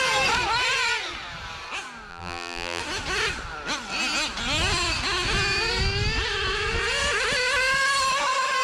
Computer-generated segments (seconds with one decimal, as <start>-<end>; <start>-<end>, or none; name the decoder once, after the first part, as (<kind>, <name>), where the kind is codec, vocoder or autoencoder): 2.1-2.8 (vocoder, BigVGAN v2)